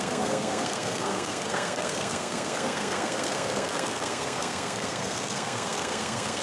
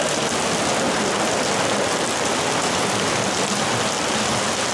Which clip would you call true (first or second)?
second